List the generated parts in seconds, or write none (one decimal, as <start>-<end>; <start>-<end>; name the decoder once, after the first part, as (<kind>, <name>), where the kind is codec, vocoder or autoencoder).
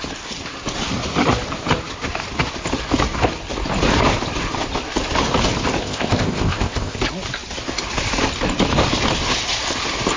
5.8-7.0 (codec, ZipCodec)